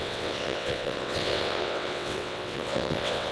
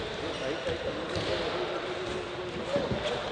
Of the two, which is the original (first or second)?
second